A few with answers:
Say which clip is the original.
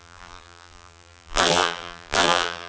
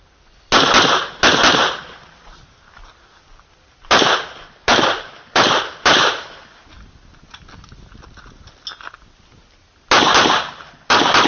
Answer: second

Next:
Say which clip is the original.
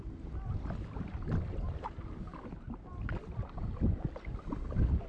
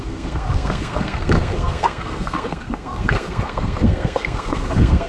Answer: first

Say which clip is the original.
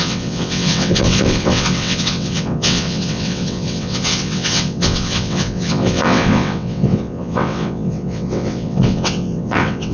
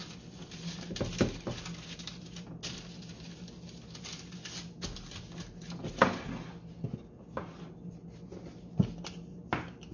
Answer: second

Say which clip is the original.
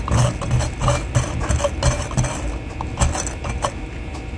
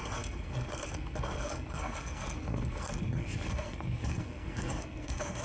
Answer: first